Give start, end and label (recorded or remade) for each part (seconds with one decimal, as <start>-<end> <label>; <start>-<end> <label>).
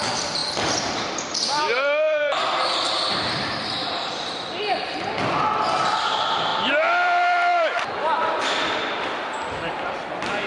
0.0-0.4 recorded; 0.4-4.6 remade; 4.6-6.5 recorded; 6.5-10.1 remade; 10.1-10.5 recorded